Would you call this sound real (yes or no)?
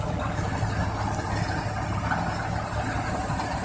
yes